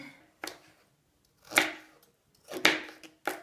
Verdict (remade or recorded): recorded